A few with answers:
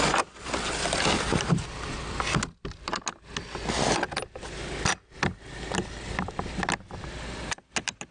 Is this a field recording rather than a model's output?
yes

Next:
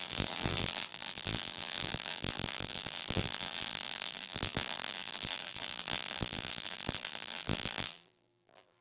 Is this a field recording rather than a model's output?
no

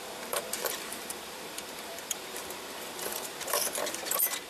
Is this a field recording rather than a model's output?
no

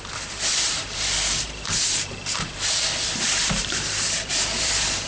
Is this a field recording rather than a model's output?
no